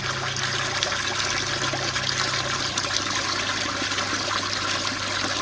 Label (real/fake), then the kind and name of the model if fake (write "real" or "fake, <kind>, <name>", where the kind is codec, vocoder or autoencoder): real